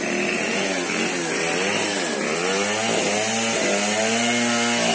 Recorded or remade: recorded